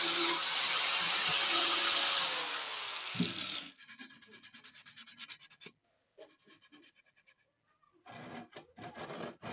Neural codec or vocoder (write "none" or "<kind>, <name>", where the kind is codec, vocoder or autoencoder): none